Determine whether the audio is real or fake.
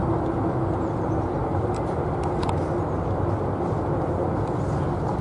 real